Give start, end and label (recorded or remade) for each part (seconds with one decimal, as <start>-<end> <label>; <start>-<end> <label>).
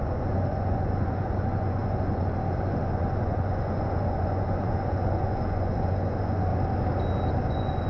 0.0-6.5 remade; 6.5-7.5 recorded; 7.5-7.9 remade